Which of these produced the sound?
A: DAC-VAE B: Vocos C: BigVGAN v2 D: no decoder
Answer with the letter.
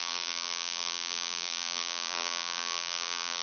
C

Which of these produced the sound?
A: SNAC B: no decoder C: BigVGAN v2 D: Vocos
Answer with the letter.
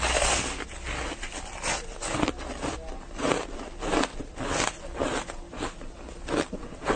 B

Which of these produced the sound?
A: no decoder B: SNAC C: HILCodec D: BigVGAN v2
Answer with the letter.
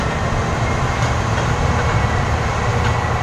D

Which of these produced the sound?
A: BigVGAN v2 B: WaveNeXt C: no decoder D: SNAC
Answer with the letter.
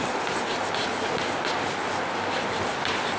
C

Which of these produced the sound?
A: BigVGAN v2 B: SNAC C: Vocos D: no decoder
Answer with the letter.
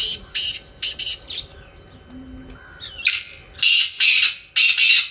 D